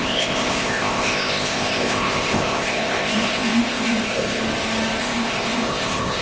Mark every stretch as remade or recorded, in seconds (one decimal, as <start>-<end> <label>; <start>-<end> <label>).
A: 0.0-4.4 remade; 4.4-5.0 recorded; 5.0-6.2 remade